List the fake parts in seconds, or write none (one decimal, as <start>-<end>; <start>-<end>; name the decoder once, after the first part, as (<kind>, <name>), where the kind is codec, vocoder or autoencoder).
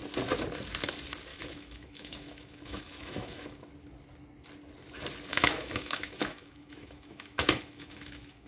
1.3-3.7 (autoencoder, DAC-VAE); 5.3-8.5